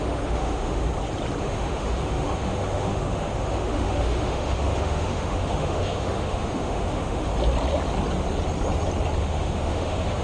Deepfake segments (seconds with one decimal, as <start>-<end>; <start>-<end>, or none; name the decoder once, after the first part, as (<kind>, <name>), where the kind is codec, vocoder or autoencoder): 0.0-0.9 (autoencoder, DAC-VAE); 1.4-7.3; 9.2-10.2